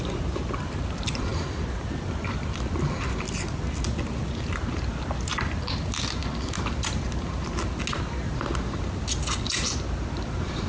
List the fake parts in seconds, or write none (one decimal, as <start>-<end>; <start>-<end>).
none

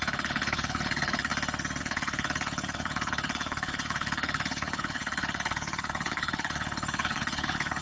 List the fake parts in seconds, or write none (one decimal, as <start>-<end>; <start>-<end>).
0.0-1.3; 1.8-7.8

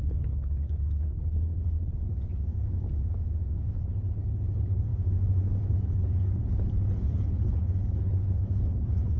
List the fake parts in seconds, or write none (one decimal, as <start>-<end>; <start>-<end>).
0.0-2.3; 3.6-4.9; 5.6-9.2